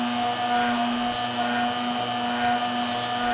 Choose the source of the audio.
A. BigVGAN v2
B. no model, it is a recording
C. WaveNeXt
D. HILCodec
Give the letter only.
B